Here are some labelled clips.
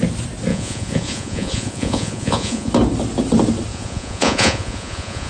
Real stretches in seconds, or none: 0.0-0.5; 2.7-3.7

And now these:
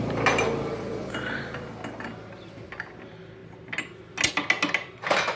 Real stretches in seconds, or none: 0.0-5.4